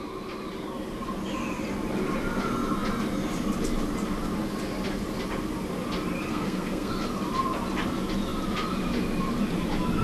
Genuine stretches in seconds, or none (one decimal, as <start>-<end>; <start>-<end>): 0.0-6.3; 6.9-10.0